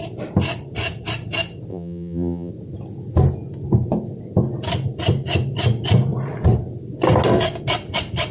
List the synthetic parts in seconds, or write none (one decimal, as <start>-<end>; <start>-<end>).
1.7-2.5